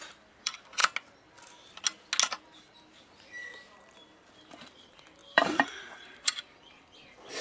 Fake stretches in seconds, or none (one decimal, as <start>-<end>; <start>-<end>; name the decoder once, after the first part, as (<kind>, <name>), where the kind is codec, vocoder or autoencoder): 0.0-0.8 (vocoder, BigVGAN v2); 4.4-7.4